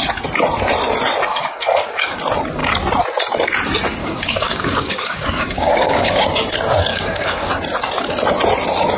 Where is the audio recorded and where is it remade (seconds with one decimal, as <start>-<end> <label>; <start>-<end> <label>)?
0.0-1.3 recorded; 1.3-2.2 remade; 2.2-4.0 recorded; 4.0-6.2 remade; 6.2-6.9 recorded; 6.9-7.5 remade; 7.5-9.0 recorded

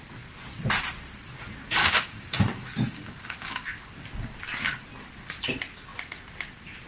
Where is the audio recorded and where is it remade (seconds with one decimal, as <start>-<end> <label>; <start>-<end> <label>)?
0.0-1.8 recorded; 1.8-3.9 remade; 3.9-6.9 recorded

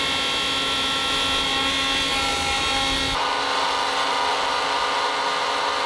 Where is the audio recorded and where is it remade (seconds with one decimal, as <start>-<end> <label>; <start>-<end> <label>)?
0.0-5.9 recorded

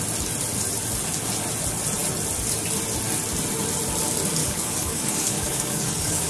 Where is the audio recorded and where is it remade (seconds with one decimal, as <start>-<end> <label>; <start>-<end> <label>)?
0.0-4.4 recorded; 4.4-6.3 remade

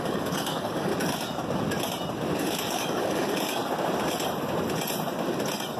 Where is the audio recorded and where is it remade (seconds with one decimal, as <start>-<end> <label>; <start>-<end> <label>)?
0.0-0.9 remade; 0.9-2.4 recorded; 2.4-3.6 remade; 3.6-5.8 recorded

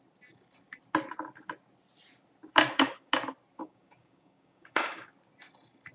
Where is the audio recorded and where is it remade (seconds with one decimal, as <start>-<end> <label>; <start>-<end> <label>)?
0.0-2.5 recorded; 2.5-3.1 remade; 3.1-3.6 recorded; 3.6-5.1 remade; 5.1-5.9 recorded